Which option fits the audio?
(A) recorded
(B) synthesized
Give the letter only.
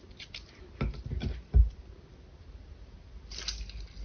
A